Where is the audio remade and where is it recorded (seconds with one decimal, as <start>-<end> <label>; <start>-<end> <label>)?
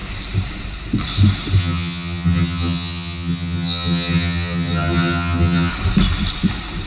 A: 0.0-1.6 recorded; 1.6-5.7 remade; 5.7-6.9 recorded